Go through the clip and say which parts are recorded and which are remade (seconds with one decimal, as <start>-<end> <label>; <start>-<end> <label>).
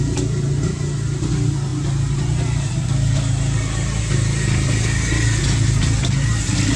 0.0-6.8 recorded